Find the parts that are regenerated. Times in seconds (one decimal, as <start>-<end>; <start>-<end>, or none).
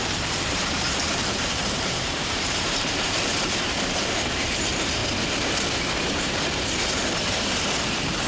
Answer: 0.0-5.0; 7.3-8.3